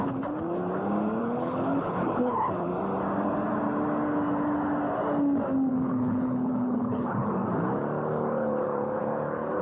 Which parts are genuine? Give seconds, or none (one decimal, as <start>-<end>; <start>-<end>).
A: 0.6-1.2; 2.7-5.7